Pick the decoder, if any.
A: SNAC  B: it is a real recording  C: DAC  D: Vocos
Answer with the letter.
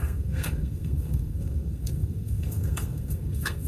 A